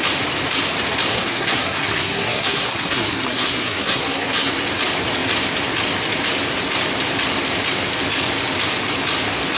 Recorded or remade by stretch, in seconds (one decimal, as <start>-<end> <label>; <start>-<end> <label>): 0.0-1.1 recorded; 1.1-4.6 remade; 4.6-9.6 recorded